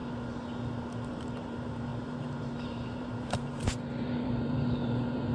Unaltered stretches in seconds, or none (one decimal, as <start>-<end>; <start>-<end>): 0.0-1.1